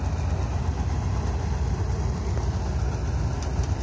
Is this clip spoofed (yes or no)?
no